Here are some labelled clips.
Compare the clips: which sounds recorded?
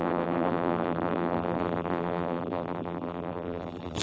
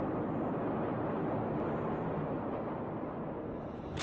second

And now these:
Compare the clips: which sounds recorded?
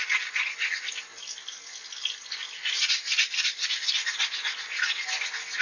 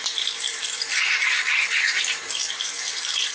first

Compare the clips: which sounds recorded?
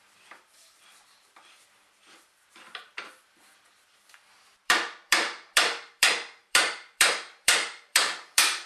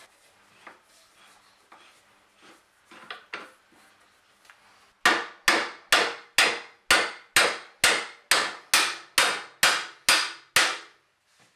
second